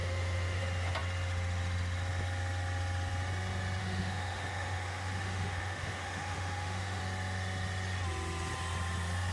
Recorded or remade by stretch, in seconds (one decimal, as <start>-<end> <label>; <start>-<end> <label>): 0.0-0.6 remade; 0.6-3.8 recorded; 3.8-7.0 remade; 7.0-9.3 recorded